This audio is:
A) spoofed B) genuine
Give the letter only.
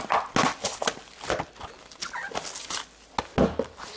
B